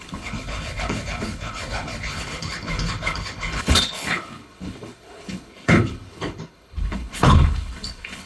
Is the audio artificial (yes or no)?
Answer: yes